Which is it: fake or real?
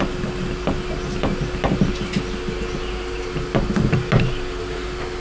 real